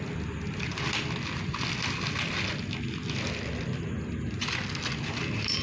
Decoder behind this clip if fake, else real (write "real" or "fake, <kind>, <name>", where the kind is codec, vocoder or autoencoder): real